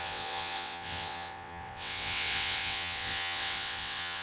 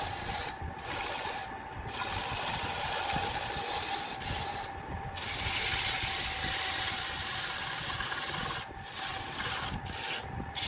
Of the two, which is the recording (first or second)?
second